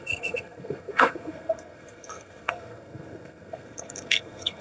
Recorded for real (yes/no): no